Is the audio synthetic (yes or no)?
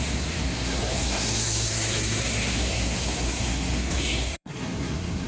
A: yes